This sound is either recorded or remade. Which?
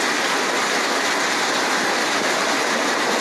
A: recorded